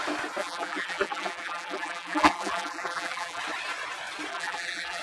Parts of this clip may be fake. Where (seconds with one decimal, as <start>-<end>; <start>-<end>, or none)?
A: 0.4-3.4; 4.3-5.0